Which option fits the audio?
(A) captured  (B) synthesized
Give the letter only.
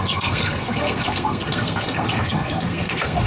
B